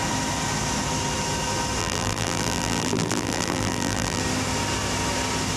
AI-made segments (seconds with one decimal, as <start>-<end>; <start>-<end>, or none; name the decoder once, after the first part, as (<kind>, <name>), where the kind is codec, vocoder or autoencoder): 1.8-4.2 (vocoder, BigVGAN v2)